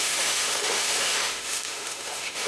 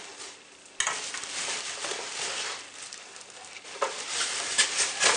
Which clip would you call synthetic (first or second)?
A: first